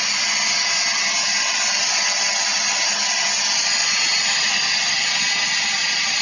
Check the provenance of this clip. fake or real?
real